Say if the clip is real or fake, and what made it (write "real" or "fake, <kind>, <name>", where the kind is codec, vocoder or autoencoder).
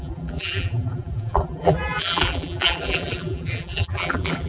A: fake, vocoder, BigVGAN v2